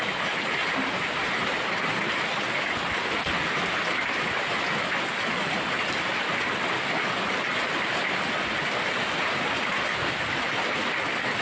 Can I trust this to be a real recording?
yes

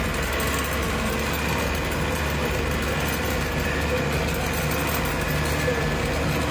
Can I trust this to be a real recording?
yes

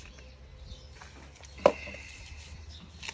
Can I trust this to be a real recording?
yes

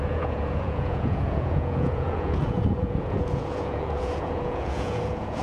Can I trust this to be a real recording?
no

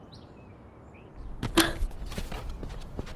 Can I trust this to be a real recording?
yes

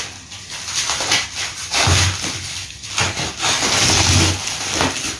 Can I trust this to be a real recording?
yes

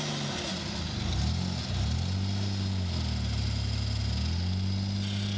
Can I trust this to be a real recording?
yes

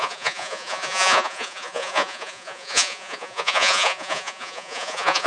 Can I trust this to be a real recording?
no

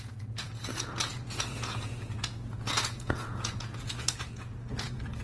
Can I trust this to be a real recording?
no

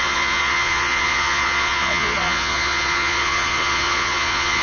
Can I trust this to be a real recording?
no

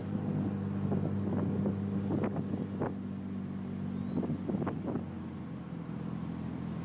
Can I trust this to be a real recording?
yes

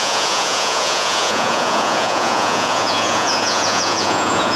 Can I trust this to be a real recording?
no